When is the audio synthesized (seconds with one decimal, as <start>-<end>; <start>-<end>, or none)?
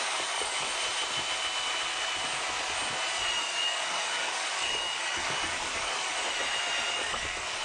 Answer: 0.0-0.7; 3.4-6.1; 6.9-7.6